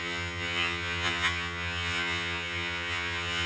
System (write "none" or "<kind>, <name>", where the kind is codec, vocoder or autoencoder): vocoder, HiFi-GAN